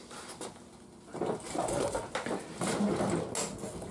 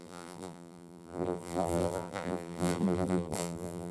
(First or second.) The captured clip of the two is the first